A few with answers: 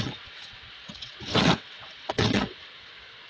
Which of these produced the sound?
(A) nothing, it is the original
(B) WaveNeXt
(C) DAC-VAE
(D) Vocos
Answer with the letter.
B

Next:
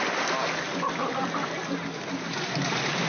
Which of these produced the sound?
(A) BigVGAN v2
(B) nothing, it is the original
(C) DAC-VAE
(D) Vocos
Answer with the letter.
B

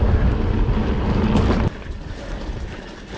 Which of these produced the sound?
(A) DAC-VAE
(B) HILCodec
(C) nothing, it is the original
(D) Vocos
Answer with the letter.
C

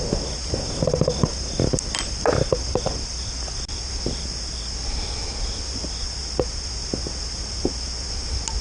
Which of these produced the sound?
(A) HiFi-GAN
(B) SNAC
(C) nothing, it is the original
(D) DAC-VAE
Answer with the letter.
C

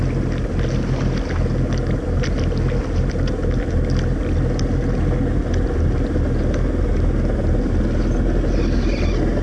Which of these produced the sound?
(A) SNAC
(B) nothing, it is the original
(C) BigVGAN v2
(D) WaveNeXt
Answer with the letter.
B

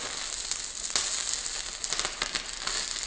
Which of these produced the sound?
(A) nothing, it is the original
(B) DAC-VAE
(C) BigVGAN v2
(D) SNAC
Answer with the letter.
A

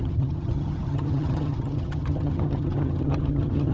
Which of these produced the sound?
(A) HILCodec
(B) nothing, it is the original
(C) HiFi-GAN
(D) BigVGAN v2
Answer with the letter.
C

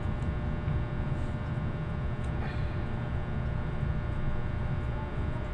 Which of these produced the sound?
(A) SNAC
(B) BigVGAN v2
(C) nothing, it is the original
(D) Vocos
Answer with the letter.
C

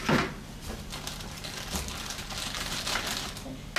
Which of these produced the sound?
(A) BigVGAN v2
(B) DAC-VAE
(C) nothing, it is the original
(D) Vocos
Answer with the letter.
C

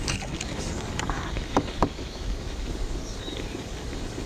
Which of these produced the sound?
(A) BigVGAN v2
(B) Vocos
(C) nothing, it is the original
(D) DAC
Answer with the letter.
D